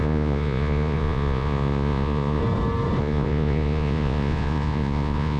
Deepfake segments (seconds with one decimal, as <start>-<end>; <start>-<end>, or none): 0.0-2.4; 3.0-5.4